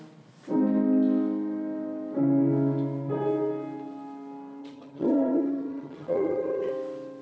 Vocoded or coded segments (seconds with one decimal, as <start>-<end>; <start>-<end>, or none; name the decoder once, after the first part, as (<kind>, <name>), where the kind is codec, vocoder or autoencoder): 4.6-6.7 (vocoder, HiFi-GAN)